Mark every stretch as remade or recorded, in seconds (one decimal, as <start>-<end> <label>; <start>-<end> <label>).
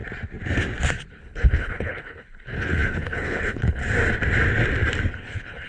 0.0-1.1 recorded; 1.1-3.8 remade; 3.8-5.1 recorded; 5.1-5.7 remade